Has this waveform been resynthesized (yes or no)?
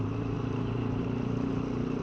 yes